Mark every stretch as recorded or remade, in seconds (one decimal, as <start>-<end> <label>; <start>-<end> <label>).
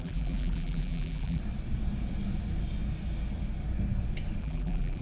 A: 0.0-1.4 remade; 1.4-4.4 recorded; 4.4-5.0 remade